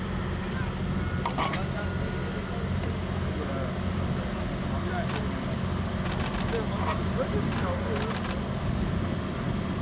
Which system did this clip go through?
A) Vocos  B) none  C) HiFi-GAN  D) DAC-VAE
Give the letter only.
B